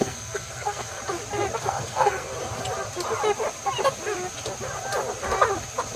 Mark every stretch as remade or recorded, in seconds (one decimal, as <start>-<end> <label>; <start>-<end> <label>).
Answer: 0.0-1.0 remade; 1.0-1.6 recorded; 1.6-2.3 remade; 2.3-6.0 recorded